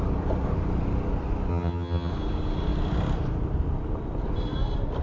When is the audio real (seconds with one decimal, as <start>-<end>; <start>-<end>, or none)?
0.0-1.5; 2.1-5.0